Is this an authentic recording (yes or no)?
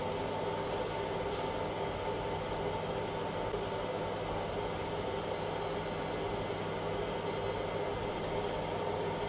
yes